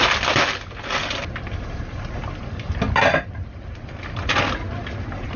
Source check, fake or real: real